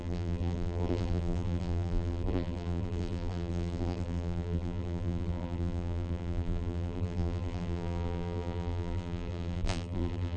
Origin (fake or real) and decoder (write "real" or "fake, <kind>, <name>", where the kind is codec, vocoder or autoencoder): fake, vocoder, BigVGAN v2